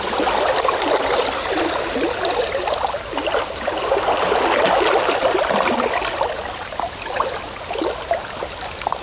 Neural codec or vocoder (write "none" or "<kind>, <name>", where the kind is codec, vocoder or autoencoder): none